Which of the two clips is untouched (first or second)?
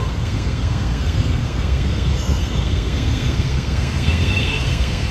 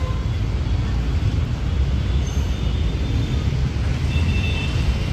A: second